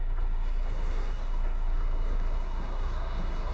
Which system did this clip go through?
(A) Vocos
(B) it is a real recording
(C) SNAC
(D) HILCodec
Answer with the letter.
C